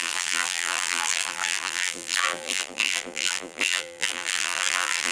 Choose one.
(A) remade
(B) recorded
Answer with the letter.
A